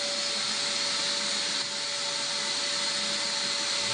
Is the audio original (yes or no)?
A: yes